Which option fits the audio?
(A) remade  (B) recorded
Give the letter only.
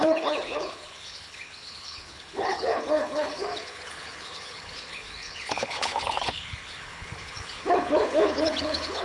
A